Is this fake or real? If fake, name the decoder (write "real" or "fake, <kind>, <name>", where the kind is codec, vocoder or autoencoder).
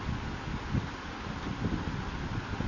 real